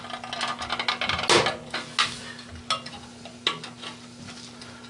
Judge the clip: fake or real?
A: real